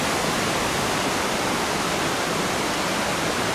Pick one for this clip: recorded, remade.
recorded